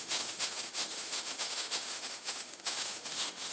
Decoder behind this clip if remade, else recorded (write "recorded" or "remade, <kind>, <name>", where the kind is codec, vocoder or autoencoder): remade, autoencoder, DAC-VAE